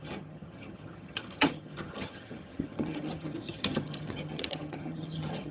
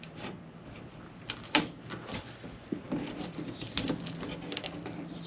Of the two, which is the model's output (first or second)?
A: first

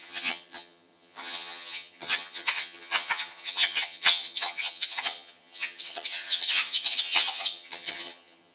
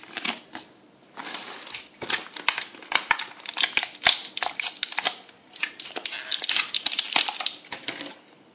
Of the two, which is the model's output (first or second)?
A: first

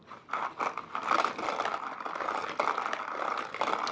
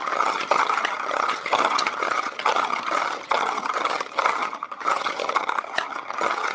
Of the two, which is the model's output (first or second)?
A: second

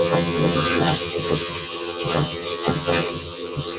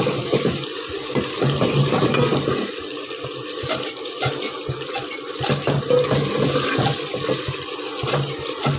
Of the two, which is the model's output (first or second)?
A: first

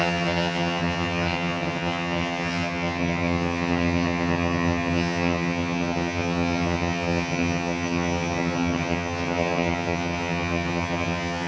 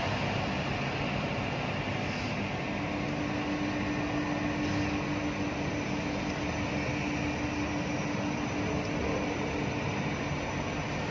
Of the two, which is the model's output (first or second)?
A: first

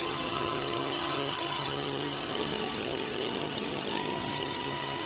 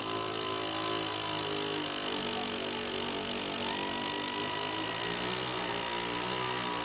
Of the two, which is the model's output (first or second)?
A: first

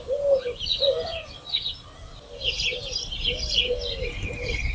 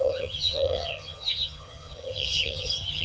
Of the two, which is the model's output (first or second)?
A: second